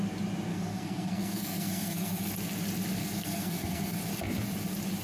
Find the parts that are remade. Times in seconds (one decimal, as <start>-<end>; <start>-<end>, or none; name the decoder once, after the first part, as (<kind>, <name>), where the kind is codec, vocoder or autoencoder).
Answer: 0.5-2.3 (codec, SNAC); 3.0-4.0